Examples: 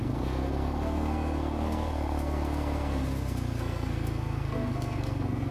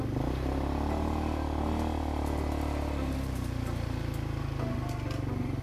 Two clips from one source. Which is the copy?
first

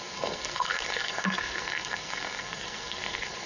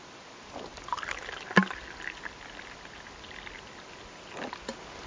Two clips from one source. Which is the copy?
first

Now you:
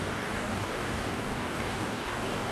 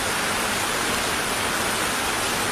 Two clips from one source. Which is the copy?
first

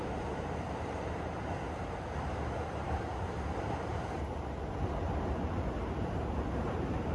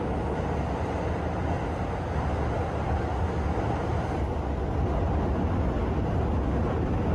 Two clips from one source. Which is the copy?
first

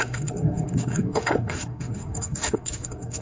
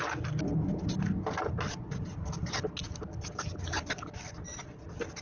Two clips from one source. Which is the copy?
first